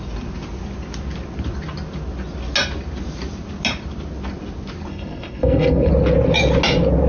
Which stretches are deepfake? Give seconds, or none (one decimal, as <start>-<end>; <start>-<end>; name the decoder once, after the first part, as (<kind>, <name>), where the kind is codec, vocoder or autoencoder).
4.9-5.9 (codec, SNAC)